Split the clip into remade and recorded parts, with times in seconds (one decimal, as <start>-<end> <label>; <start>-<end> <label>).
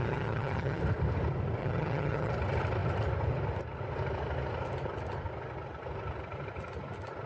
0.0-0.8 remade; 0.8-1.6 recorded; 1.6-2.3 remade; 2.3-7.3 recorded